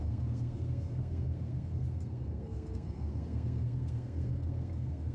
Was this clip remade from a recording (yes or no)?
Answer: yes